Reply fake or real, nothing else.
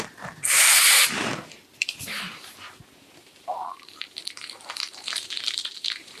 fake